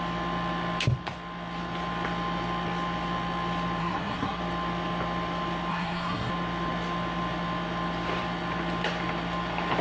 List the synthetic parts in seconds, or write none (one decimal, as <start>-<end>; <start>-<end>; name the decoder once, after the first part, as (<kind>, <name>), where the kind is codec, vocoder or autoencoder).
3.8-4.4 (codec, SNAC); 5.7-6.3

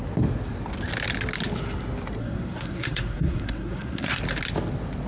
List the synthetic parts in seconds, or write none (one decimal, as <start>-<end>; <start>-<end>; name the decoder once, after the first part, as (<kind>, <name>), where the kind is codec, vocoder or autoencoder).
2.2-4.2 (codec, SNAC)

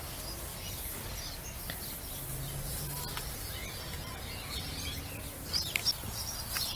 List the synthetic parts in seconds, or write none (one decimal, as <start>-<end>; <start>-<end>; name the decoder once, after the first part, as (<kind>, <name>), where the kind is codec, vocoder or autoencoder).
none